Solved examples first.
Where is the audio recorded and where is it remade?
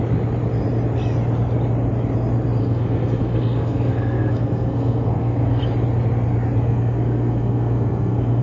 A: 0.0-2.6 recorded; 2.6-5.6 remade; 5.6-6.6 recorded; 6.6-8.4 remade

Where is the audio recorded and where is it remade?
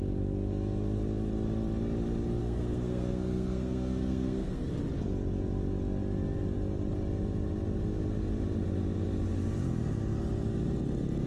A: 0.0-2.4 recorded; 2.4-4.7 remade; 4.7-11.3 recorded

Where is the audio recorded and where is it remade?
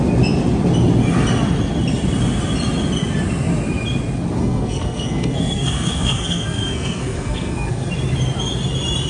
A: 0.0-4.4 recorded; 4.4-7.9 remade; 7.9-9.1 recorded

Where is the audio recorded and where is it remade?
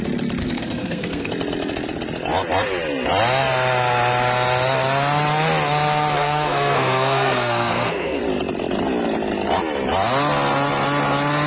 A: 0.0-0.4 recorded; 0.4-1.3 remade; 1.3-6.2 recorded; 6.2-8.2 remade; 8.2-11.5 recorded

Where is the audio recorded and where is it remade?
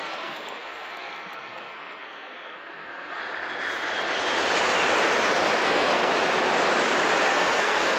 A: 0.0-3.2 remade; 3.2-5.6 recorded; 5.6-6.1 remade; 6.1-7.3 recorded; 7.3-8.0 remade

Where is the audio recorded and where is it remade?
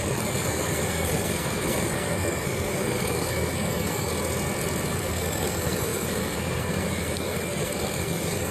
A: 0.0-4.1 remade; 4.1-4.9 recorded; 4.9-8.5 remade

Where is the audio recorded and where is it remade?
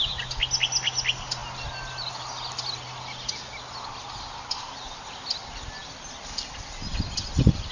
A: 0.0-7.7 recorded